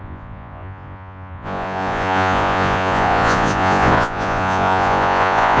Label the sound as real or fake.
fake